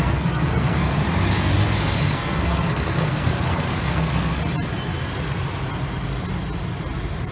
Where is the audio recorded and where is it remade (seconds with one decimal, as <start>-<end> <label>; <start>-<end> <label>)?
0.0-0.9 remade; 0.9-2.1 recorded; 2.1-4.4 remade; 4.4-7.3 recorded